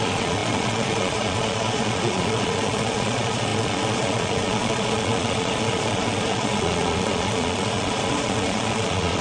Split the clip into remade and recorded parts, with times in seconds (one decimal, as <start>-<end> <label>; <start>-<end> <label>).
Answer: 0.0-9.2 remade